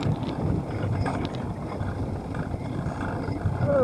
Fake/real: real